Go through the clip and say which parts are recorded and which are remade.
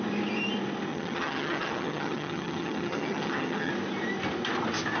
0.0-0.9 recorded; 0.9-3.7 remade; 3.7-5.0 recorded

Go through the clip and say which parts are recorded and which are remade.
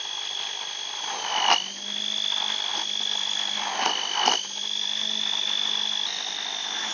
0.0-6.9 recorded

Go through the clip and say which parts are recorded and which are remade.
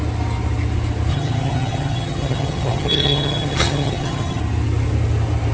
0.0-1.1 recorded; 1.1-4.4 remade; 4.4-5.5 recorded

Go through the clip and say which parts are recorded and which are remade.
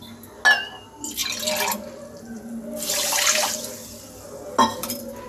0.0-5.3 recorded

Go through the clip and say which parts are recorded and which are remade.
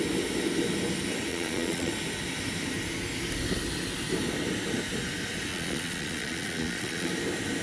0.0-1.3 recorded; 1.3-1.9 remade; 1.9-5.5 recorded; 5.5-7.1 remade; 7.1-7.6 recorded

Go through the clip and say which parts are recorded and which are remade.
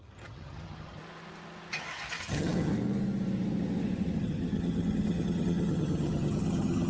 0.0-1.0 remade; 1.0-2.2 recorded; 2.2-2.7 remade; 2.7-4.2 recorded; 4.2-6.9 remade